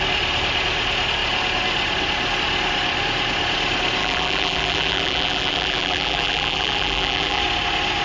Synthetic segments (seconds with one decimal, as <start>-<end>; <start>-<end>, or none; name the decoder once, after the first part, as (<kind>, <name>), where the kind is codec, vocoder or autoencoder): 4.0-7.4 (vocoder, BigVGAN v2)